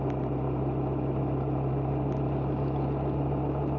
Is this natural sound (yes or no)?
yes